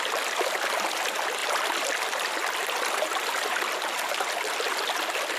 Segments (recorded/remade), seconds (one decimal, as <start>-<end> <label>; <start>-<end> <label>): 0.0-5.4 recorded